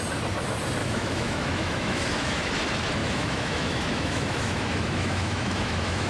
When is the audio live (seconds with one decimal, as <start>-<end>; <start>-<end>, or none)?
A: 0.0-0.8; 2.5-3.0